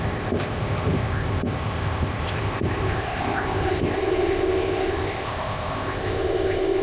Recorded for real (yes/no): no